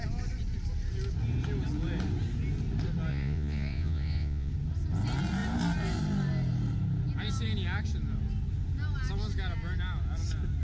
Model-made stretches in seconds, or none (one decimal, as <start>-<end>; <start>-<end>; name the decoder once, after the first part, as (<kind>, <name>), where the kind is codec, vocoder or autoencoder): 3.1-4.5 (vocoder, Vocos)